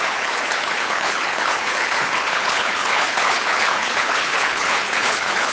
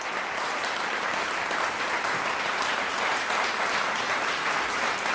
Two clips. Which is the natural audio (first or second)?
second